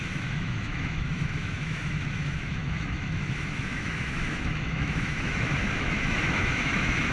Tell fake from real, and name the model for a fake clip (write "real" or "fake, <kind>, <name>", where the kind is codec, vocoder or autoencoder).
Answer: fake, autoencoder, DAC-VAE